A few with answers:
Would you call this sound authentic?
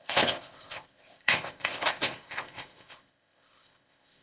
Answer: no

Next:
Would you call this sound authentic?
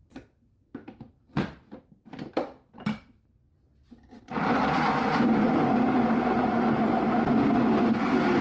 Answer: yes